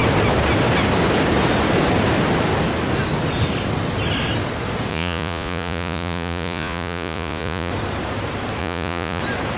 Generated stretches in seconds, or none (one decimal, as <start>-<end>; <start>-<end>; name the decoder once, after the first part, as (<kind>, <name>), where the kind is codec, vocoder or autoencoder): 4.9-7.7 (vocoder, Vocos); 8.6-9.2